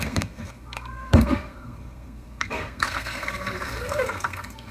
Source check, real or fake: fake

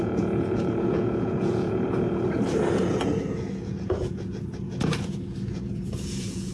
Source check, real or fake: fake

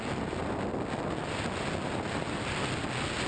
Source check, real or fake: real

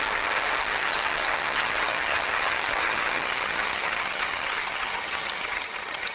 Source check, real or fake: fake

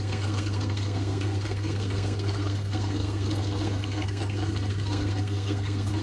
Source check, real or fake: fake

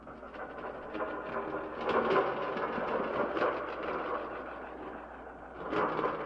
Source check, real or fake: real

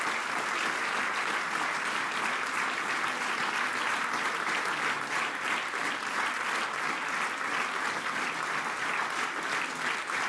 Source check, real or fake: real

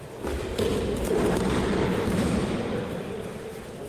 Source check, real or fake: real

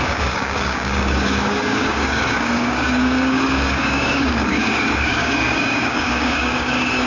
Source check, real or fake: fake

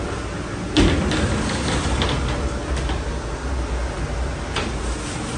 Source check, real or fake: real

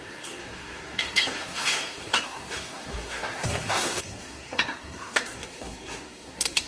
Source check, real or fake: fake